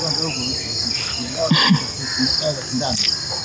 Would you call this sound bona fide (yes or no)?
yes